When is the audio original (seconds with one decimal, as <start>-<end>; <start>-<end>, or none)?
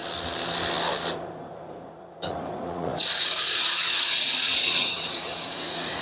0.0-1.1